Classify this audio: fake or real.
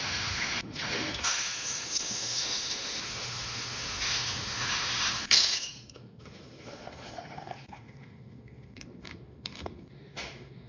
fake